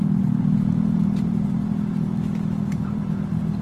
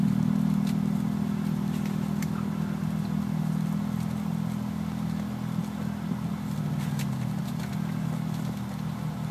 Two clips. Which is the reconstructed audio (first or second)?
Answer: first